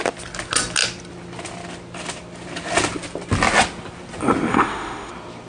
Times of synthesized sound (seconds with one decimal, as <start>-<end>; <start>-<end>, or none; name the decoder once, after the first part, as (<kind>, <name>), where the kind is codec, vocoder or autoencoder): 4.5-5.1 (autoencoder, DAC-VAE)

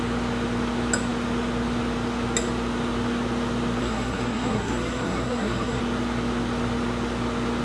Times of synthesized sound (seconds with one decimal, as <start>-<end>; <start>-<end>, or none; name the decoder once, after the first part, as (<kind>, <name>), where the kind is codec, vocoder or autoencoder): 3.8-5.8 (codec, SNAC)

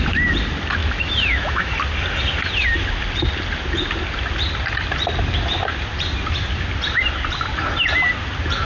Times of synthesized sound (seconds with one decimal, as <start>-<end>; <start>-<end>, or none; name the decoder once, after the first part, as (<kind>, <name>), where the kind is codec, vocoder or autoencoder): 0.8-1.7 (autoencoder, DAC-VAE)

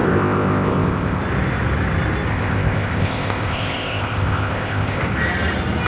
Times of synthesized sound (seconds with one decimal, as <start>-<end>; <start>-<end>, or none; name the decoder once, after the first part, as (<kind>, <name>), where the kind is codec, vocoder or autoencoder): 0.0-1.2 (codec, ZipCodec); 2.3-5.0

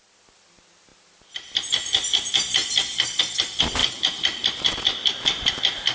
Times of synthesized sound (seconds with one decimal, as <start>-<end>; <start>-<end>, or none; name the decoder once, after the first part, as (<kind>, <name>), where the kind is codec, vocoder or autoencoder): none

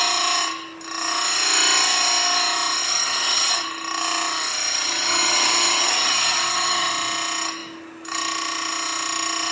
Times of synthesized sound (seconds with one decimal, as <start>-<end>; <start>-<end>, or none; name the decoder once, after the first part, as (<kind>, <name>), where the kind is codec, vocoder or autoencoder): 2.8-3.6 (vocoder, HiFi-GAN); 4.7-6.9